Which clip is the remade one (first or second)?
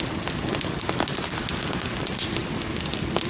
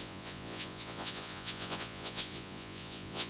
second